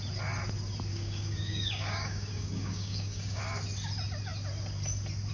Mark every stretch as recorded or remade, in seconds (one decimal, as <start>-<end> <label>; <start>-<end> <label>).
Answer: 0.0-0.9 recorded; 0.9-3.4 remade; 3.4-5.3 recorded